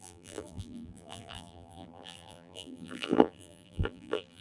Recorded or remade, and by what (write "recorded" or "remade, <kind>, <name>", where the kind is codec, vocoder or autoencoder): remade, vocoder, BigVGAN v2